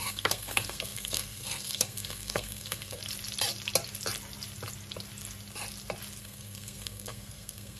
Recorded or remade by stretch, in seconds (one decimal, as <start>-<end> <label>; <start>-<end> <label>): 0.0-3.0 remade; 3.0-6.2 recorded; 6.2-7.8 remade